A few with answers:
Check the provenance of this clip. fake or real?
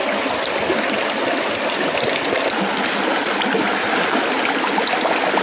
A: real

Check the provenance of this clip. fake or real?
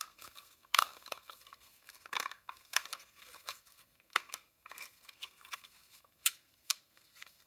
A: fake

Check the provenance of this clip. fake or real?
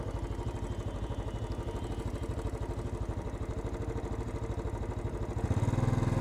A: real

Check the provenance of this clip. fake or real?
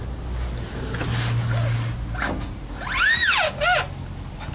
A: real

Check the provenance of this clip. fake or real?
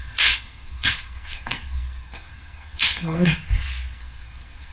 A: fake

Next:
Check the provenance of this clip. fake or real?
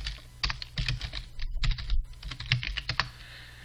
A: real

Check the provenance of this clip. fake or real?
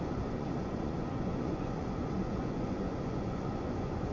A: fake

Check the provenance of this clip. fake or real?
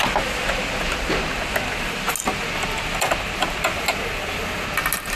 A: real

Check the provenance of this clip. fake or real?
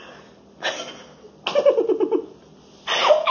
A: real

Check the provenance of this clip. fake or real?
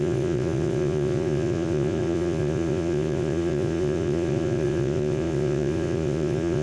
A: fake